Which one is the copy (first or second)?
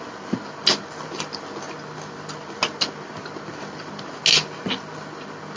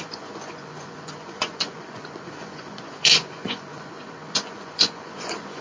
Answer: second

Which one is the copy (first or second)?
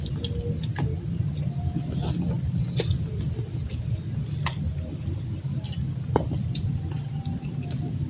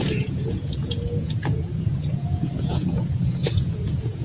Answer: second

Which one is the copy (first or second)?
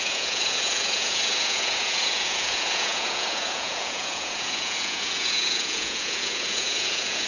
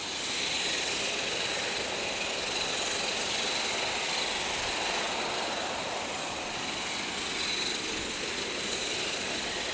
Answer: first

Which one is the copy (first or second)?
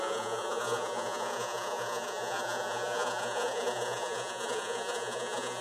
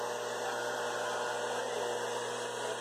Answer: first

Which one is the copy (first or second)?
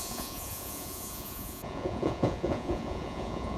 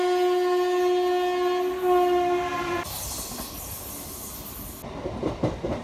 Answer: first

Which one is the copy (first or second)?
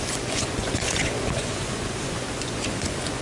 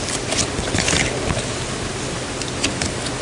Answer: first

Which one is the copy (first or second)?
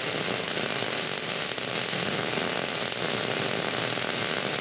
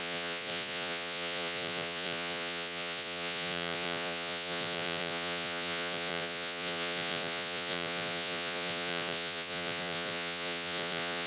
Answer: second